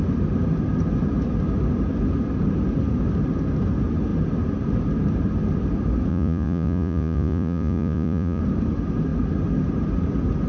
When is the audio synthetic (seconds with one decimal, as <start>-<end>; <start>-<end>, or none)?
6.1-8.4